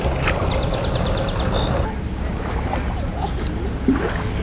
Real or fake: real